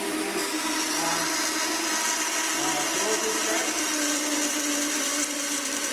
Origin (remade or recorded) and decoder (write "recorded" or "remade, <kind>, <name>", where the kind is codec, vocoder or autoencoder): recorded